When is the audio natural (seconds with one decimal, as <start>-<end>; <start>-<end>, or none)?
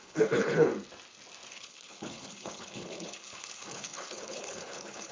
0.7-1.5